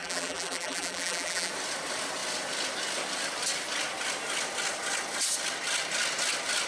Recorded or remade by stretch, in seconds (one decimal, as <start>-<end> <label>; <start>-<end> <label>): 0.0-1.5 remade; 1.5-6.7 recorded